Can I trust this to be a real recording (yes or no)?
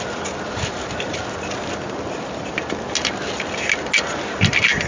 yes